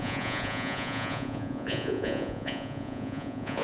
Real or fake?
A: fake